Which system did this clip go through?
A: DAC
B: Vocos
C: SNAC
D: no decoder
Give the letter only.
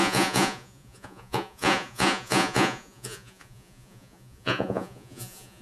B